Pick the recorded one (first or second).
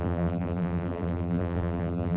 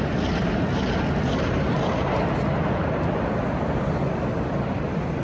second